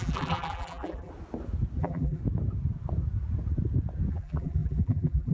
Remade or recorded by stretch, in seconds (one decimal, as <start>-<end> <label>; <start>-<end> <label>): 0.0-1.1 remade; 1.1-1.8 recorded; 1.8-2.2 remade; 2.2-4.1 recorded; 4.1-5.3 remade